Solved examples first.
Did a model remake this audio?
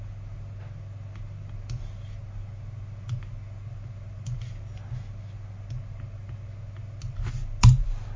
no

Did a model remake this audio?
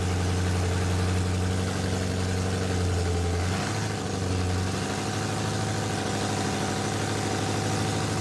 no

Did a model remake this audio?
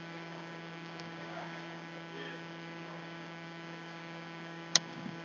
yes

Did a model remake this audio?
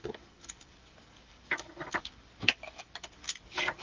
yes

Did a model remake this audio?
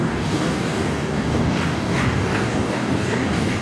yes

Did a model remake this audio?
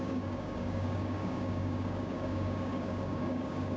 yes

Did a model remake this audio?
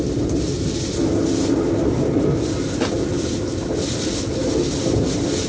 no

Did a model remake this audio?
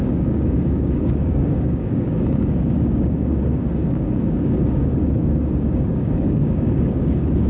yes